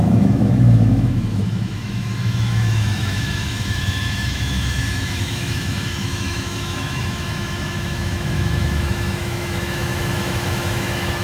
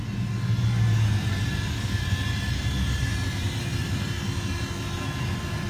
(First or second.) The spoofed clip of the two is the first